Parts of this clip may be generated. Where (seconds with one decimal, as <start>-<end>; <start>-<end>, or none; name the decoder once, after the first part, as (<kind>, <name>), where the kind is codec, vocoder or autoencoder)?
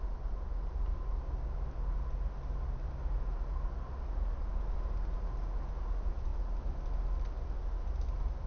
none